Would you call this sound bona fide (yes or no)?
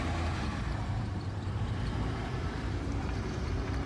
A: no